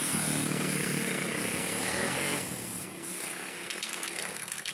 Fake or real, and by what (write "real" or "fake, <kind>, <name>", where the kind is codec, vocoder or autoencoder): fake, codec, SNAC